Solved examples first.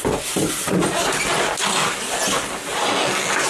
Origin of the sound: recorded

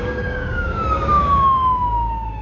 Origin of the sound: remade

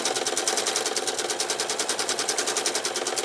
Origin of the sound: recorded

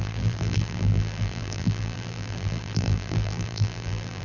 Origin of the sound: remade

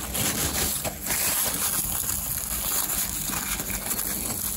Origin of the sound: recorded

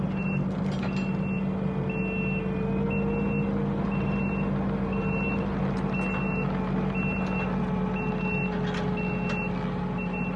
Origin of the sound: recorded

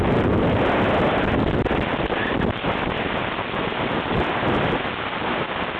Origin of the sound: recorded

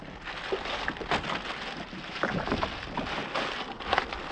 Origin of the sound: recorded